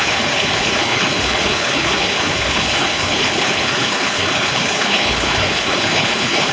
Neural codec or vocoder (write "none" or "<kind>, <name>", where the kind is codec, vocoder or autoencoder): codec, HILCodec